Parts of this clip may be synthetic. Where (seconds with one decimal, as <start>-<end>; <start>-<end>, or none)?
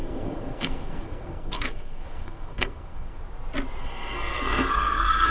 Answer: 0.0-3.2; 3.8-5.3